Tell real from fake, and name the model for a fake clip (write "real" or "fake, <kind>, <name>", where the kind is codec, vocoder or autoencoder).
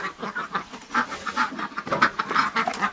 real